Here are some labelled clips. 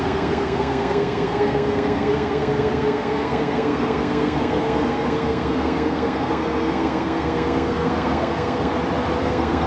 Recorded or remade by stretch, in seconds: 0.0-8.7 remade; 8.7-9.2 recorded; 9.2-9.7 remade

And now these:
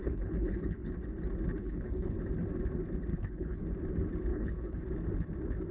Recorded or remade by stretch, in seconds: 0.0-0.9 remade; 0.9-1.6 recorded; 1.6-2.2 remade; 2.2-3.1 recorded; 3.1-3.6 remade; 3.6-4.3 recorded; 4.3-4.9 remade; 4.9-5.7 recorded